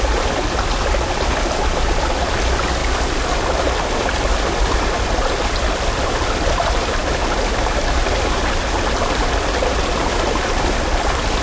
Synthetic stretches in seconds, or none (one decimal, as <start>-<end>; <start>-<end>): 0.0-7.0; 9.7-11.4